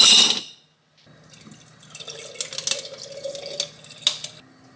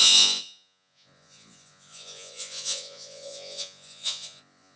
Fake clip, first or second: second